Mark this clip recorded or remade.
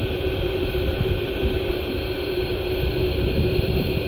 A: recorded